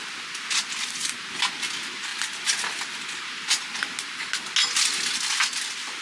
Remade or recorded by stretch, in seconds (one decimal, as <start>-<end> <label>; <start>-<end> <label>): 0.0-6.0 recorded